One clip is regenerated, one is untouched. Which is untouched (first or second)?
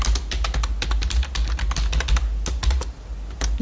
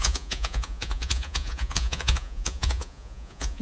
first